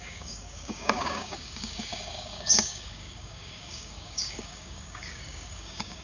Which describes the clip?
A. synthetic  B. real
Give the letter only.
A